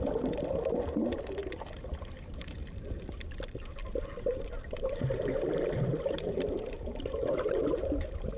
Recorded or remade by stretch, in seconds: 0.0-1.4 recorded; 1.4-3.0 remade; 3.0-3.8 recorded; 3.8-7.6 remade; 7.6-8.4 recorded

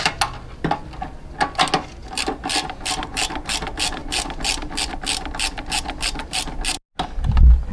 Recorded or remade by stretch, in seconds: 0.0-7.7 recorded

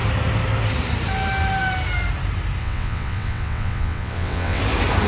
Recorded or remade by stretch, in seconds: 0.0-2.6 recorded; 2.6-4.6 remade; 4.6-5.1 recorded

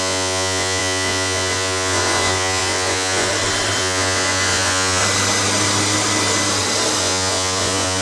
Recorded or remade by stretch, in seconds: 0.0-3.3 remade; 3.3-3.8 recorded; 3.8-5.0 remade; 5.0-7.0 recorded; 7.0-8.0 remade

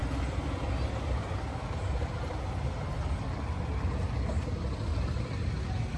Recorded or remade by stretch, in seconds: 0.0-6.0 recorded

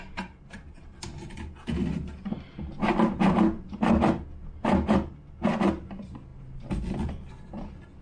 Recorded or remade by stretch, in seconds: 0.0-8.0 recorded

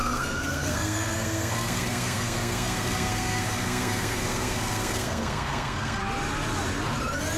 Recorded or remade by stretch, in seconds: 0.0-6.0 remade; 6.0-7.4 recorded